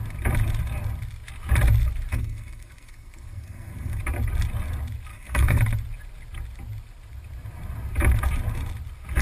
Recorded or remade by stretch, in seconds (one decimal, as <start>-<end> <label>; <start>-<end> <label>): 0.0-2.1 recorded; 2.1-4.0 remade; 4.0-5.1 recorded; 5.1-5.6 remade; 5.6-9.2 recorded